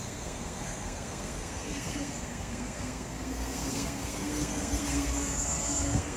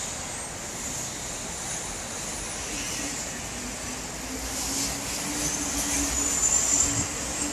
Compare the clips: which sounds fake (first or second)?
first